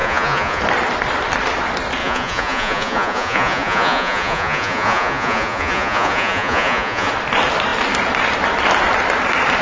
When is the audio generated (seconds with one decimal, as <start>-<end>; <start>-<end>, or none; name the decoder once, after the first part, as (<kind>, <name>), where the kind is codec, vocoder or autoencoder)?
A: 0.0-0.6 (vocoder, Vocos); 2.0-7.1